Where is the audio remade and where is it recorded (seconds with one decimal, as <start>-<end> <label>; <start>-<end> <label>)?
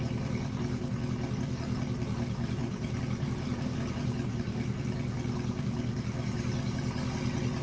0.0-2.4 recorded; 2.4-3.0 remade; 3.0-7.6 recorded